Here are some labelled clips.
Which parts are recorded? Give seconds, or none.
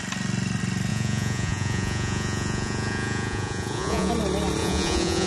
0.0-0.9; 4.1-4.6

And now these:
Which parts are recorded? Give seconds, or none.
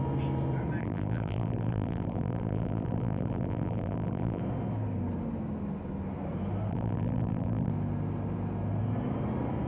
0.0-0.8; 4.4-6.7; 7.7-9.7